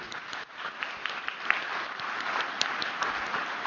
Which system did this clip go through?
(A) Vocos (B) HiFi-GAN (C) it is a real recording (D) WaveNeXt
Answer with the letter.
C